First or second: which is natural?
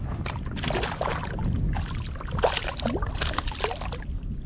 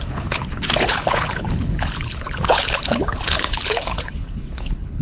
first